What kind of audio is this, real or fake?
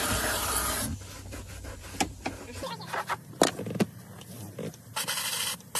real